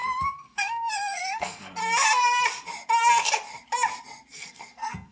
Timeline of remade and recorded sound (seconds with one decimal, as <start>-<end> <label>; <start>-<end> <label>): 0.0-1.8 remade; 1.8-4.3 recorded; 4.3-5.1 remade